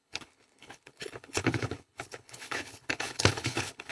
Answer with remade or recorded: remade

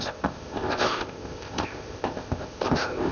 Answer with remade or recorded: remade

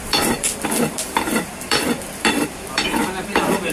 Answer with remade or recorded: remade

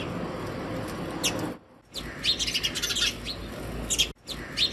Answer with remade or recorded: recorded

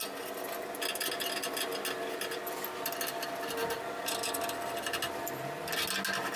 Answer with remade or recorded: recorded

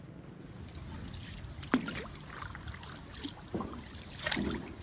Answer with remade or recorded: recorded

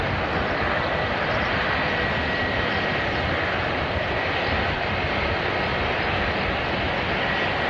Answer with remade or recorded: recorded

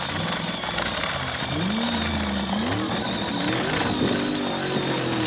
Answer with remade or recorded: recorded